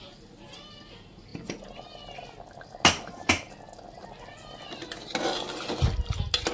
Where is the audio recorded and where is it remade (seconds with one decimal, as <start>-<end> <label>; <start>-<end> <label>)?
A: 0.0-6.5 recorded